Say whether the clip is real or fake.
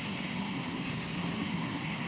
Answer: fake